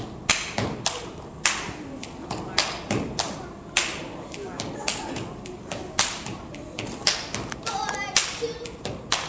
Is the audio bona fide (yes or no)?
yes